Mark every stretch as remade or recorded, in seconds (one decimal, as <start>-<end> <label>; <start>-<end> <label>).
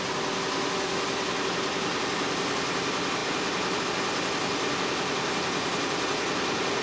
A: 0.0-6.8 recorded